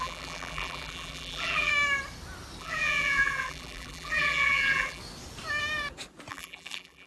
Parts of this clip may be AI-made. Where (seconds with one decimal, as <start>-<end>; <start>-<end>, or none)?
0.0-1.7; 2.6-5.0; 6.3-7.1